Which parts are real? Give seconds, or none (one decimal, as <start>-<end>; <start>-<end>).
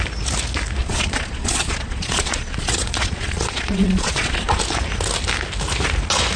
0.0-0.8; 4.6-6.4